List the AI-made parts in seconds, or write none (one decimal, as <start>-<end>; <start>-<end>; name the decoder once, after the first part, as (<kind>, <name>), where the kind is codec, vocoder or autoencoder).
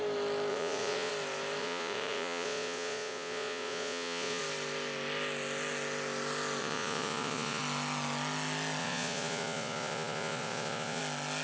0.5-1.1 (vocoder, Vocos); 1.6-4.4; 6.6-7.6; 8.8-11.0